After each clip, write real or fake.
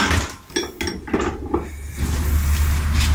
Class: real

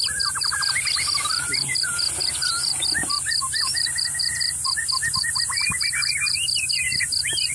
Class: fake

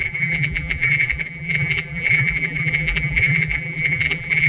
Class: fake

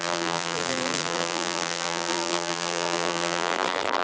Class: fake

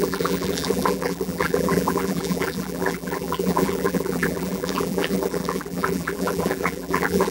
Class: fake